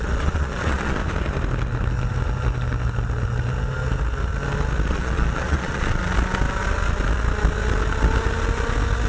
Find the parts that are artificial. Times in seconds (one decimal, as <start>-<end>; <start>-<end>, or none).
0.0-1.0; 4.9-6.0